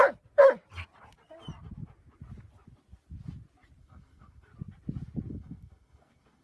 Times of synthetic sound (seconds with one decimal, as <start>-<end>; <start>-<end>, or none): 3.8-4.5; 5.3-6.4